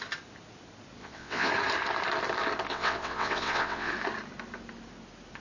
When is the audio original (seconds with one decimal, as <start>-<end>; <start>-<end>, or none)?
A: 0.0-1.0; 1.5-2.7; 3.9-5.4